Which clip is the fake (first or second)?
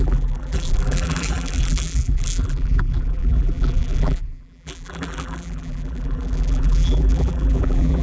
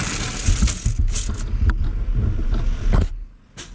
first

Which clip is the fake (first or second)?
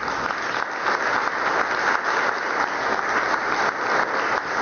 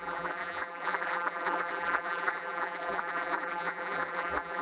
second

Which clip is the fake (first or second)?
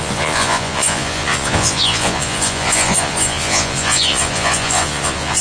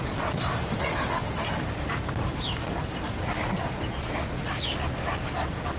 first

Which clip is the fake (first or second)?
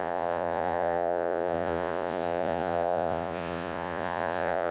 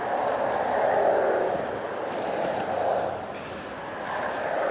first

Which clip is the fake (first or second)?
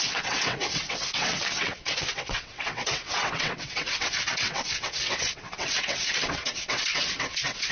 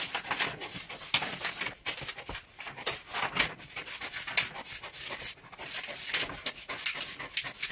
first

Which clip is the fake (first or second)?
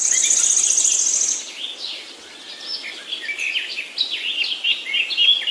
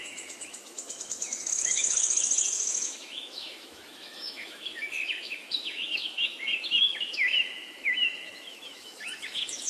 second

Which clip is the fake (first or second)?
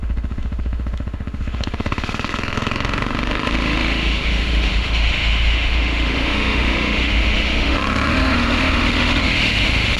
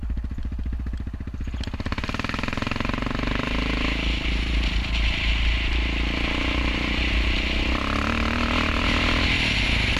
first